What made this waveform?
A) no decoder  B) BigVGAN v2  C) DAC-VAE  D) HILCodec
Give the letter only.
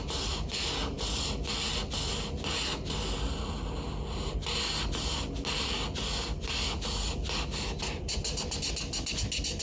A